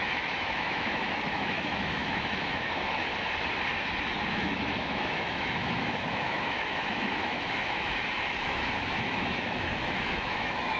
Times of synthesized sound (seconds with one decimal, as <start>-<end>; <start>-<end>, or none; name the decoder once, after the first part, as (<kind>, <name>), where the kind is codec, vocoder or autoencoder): 0.0-3.1 (autoencoder, DAC-VAE); 4.3-10.8